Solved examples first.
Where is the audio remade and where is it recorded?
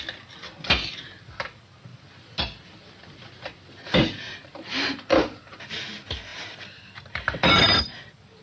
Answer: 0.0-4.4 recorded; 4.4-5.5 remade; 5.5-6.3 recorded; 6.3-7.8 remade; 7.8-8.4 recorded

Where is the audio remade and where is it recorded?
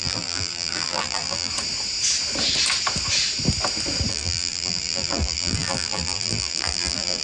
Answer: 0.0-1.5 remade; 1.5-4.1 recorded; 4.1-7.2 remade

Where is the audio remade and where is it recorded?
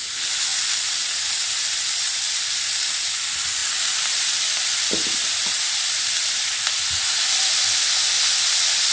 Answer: 0.0-0.5 recorded; 0.5-2.3 remade; 2.3-3.6 recorded; 3.6-8.9 remade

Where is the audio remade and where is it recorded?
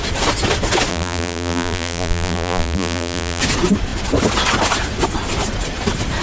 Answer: 0.0-0.9 recorded; 0.9-3.4 remade; 3.4-6.2 recorded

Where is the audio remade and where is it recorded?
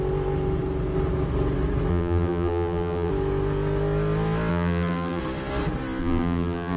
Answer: 0.0-1.9 recorded; 1.9-3.1 remade; 3.1-4.5 recorded; 4.5-5.2 remade; 5.2-6.0 recorded; 6.0-6.8 remade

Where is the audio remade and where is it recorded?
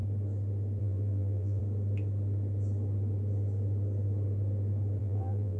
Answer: 0.0-0.8 recorded; 0.8-1.6 remade; 1.6-5.0 recorded; 5.0-5.6 remade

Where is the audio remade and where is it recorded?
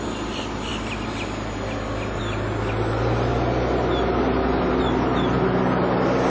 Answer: 0.0-6.3 recorded